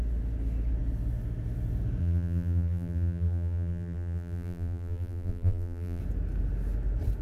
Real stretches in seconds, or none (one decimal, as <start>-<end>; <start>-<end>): 0.0-2.0; 6.0-7.2